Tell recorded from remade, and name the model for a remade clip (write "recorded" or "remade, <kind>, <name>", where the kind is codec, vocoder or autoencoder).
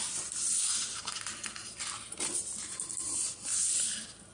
recorded